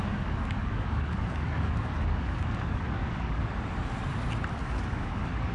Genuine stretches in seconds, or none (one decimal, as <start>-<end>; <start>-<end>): 3.4-4.5